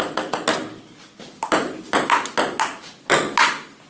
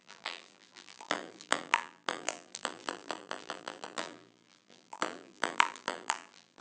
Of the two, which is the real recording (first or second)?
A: first